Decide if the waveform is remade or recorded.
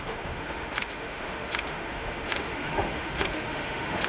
remade